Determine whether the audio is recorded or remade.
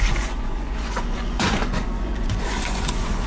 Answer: remade